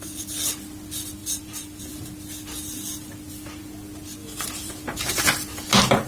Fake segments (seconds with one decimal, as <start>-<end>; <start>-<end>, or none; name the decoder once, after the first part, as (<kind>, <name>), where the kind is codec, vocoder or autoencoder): 1.2-1.8 (vocoder, BigVGAN v2); 4.2-4.7